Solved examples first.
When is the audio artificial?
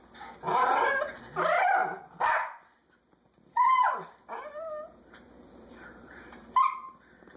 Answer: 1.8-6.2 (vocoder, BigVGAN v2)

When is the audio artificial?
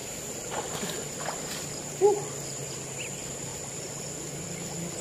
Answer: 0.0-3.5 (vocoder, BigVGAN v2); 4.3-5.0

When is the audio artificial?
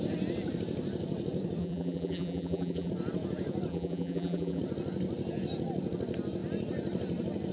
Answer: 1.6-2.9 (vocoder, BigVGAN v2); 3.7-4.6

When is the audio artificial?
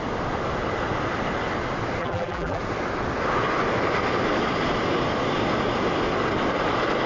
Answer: 2.0-2.6 (vocoder, BigVGAN v2)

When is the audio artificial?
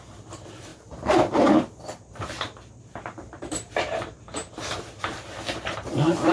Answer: 0.0-6.3 (vocoder, BigVGAN v2)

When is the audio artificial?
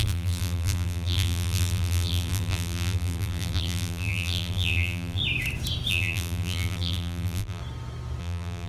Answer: 0.0-5.2 (vocoder, BigVGAN v2); 5.9-7.6; 8.2-8.7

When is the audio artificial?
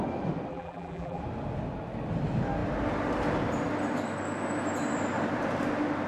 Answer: 0.5-1.2 (vocoder, BigVGAN v2)